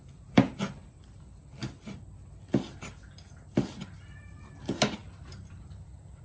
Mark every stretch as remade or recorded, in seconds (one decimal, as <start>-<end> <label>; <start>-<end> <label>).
0.0-6.2 recorded